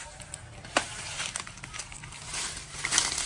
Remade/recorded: recorded